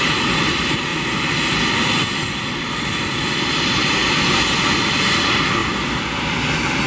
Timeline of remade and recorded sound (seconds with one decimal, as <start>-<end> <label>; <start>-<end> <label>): 0.0-0.9 remade; 0.9-3.1 recorded; 3.1-4.0 remade; 4.0-4.6 recorded; 4.6-5.6 remade; 5.6-6.9 recorded